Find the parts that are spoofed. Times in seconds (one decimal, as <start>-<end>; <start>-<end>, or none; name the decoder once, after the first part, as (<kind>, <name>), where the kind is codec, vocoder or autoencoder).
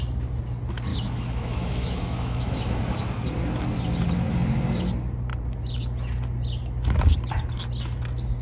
0.9-2.8 (autoencoder, DAC-VAE)